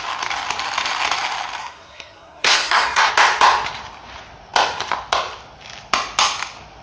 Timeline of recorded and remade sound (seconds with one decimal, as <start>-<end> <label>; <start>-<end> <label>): 0.0-1.6 recorded; 1.6-3.1 remade; 3.1-6.8 recorded